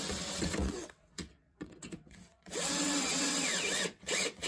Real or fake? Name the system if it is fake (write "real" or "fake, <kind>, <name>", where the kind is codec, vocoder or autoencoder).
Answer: fake, vocoder, WaveNeXt